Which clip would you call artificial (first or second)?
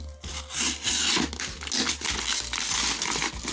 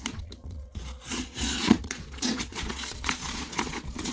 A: second